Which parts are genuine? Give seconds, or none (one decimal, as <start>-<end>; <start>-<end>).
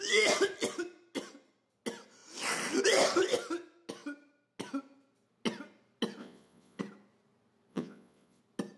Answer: 0.0-6.2; 6.8-7.7; 8.4-8.8